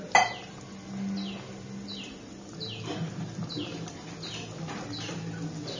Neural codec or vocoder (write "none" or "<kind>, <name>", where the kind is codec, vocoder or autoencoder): none